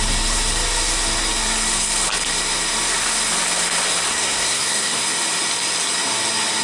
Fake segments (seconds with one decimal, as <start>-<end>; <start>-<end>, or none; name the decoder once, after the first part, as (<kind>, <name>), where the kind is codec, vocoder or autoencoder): 4.1-5.0 (codec, SNAC)